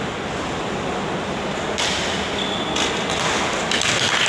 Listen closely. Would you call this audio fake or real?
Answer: real